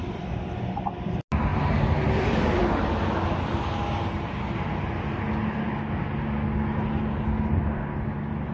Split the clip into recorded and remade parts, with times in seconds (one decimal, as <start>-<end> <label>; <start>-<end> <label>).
0.0-8.5 recorded